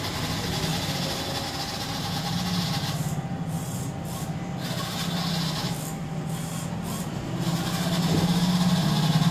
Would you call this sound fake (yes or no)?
no